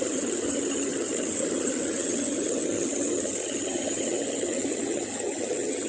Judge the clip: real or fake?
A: fake